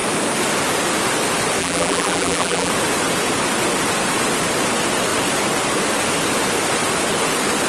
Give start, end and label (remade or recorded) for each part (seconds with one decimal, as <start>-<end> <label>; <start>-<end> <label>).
0.0-1.6 recorded; 1.6-2.7 remade; 2.7-7.7 recorded